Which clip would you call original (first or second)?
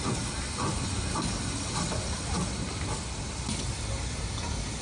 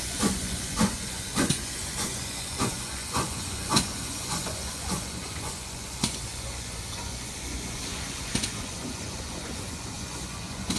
first